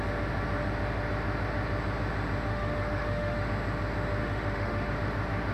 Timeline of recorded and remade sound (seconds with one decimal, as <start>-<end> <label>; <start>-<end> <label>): 0.0-2.5 recorded; 2.5-3.5 remade; 3.5-4.2 recorded; 4.2-4.9 remade; 4.9-5.5 recorded